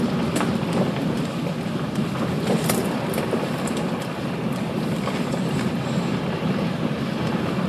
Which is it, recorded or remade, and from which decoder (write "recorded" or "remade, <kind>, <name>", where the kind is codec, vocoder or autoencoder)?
remade, vocoder, BigVGAN v2